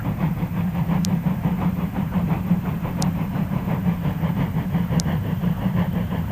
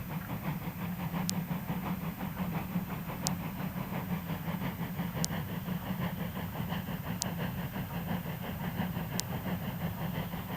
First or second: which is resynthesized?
first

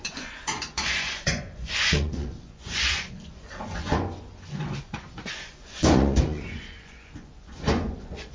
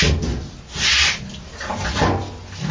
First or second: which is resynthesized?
first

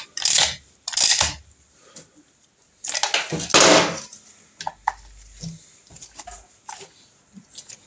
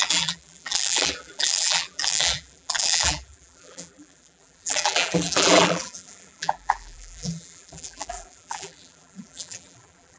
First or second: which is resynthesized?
second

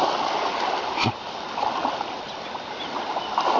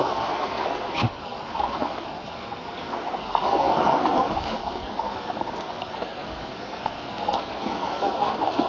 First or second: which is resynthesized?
second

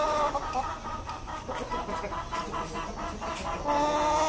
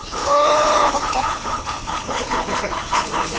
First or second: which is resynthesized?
second